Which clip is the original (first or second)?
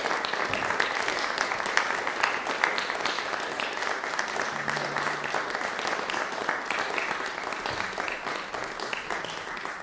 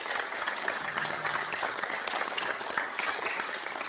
first